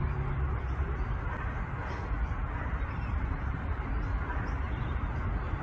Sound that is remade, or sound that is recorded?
recorded